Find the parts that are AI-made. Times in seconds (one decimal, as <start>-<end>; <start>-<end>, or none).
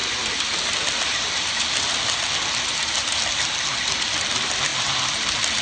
none